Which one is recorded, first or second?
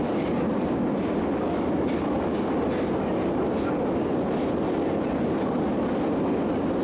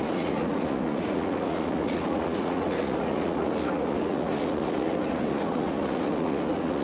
first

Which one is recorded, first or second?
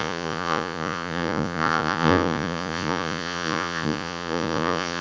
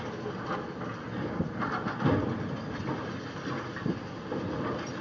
second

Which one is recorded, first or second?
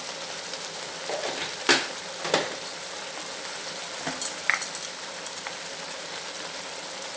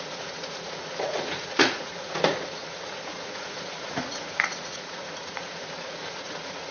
first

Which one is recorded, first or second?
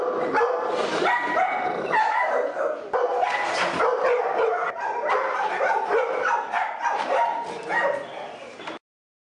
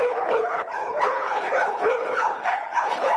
first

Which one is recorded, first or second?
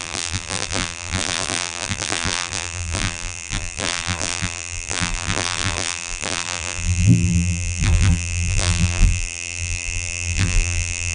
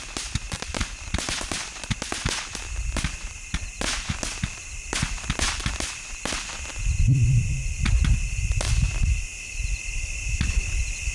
second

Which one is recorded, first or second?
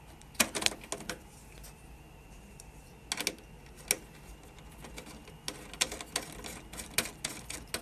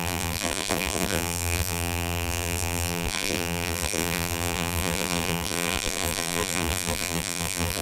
first